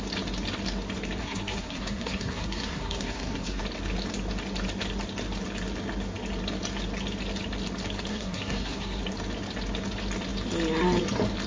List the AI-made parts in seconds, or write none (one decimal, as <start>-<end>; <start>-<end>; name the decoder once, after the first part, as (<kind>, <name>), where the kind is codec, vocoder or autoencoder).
1.2-3.6 (codec, SNAC); 8.1-9.0